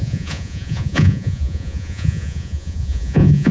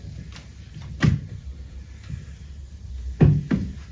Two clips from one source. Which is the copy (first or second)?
first